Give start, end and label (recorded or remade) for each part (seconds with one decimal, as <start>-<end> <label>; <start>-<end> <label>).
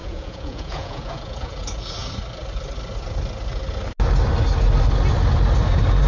0.0-1.6 remade; 1.6-6.1 recorded